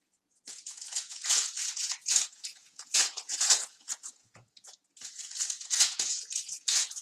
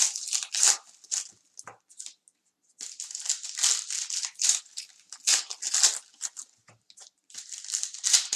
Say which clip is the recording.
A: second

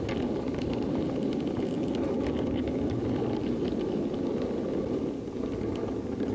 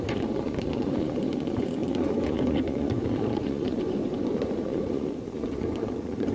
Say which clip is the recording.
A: first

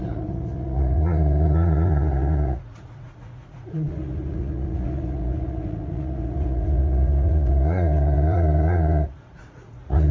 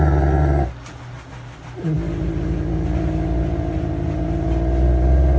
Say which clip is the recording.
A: second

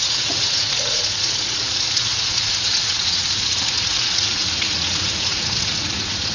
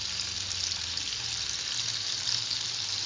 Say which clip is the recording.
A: second